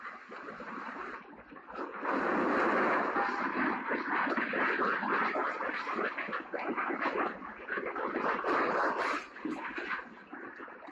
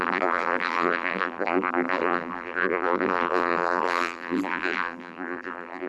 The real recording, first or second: first